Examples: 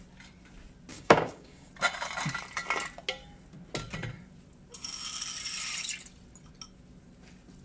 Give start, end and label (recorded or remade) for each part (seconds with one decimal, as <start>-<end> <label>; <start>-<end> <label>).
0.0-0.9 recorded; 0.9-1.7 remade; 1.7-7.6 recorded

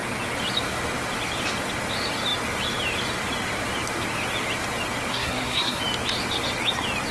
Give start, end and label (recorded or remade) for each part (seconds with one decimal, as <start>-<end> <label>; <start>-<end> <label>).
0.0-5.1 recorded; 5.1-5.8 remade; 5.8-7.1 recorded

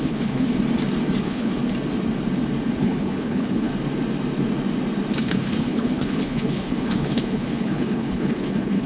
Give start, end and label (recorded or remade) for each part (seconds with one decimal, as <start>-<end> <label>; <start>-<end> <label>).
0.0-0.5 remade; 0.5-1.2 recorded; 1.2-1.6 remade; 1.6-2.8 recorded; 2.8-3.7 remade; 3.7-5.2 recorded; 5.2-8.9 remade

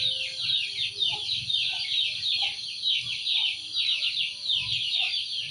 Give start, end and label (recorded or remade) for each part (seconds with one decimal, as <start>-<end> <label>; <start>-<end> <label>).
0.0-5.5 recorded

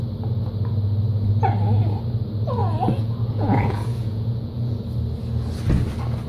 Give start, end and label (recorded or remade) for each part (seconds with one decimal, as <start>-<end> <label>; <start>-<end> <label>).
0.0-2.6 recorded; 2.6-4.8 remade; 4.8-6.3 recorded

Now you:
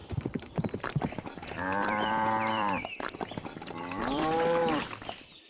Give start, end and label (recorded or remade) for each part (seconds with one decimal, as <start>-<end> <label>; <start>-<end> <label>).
0.0-5.5 remade

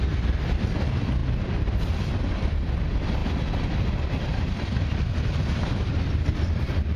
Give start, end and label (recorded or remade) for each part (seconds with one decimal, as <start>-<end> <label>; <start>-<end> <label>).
0.0-3.2 remade; 3.2-3.8 recorded; 3.8-7.0 remade